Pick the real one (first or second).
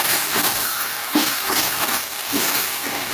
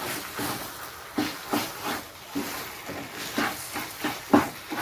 second